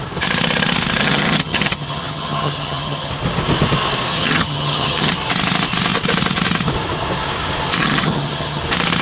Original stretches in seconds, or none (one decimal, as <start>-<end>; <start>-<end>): 0.0-1.0; 3.1-4.1; 5.1-7.8; 8.6-9.0